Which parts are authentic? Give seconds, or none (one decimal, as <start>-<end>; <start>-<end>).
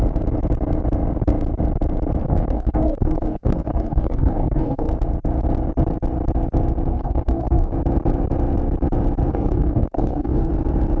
0.0-2.2; 4.9-6.9; 7.7-9.3; 10.5-11.0